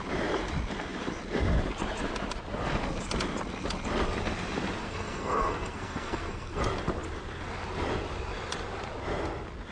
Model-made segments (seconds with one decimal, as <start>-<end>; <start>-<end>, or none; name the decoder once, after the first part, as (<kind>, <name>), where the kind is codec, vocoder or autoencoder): 4.8-6.6 (codec, SNAC)